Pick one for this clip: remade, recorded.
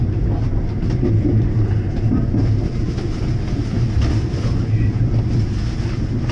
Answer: recorded